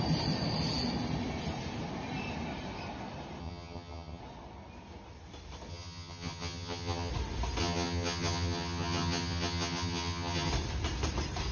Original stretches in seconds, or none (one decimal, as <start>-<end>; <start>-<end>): 0.0-3.4; 4.2-5.7; 7.1-7.6; 10.5-11.5